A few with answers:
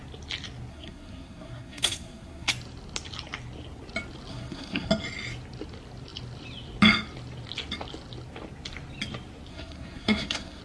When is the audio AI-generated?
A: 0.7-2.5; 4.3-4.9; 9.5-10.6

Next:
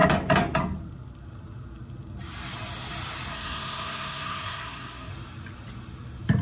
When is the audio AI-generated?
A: 3.3-5.1

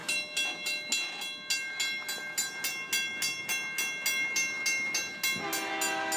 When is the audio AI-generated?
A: none

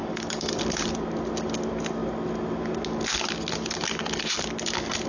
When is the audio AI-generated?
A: 0.0-0.6

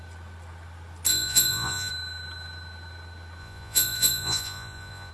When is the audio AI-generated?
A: 1.1-1.9; 3.4-5.1

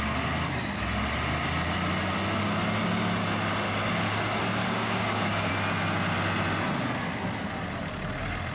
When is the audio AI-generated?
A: 4.6-5.5

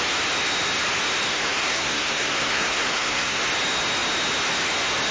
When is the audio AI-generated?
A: 1.3-3.4